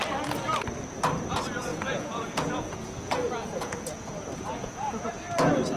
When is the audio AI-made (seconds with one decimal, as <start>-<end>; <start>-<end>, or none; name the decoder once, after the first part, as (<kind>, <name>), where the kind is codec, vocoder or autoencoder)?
1.7-5.1 (vocoder, Vocos)